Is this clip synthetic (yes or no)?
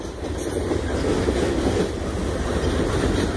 no